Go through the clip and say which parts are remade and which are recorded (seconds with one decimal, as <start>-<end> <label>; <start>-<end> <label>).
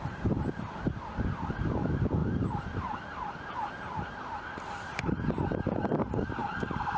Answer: 0.0-7.0 recorded